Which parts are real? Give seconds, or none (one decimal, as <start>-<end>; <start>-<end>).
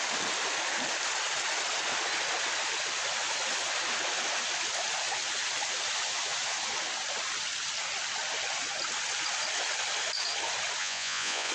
0.0-10.8